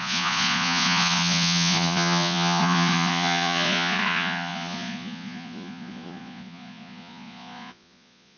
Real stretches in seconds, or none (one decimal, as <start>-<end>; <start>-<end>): none